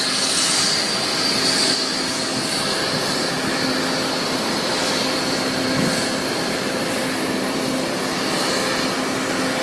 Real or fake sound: real